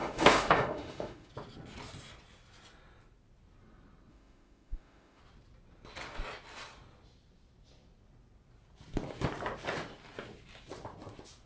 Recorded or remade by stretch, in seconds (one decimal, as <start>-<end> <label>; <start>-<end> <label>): 0.0-1.3 remade; 1.3-4.1 recorded; 4.1-5.2 remade; 5.2-11.5 recorded